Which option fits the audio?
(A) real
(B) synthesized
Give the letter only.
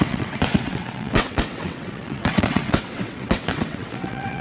B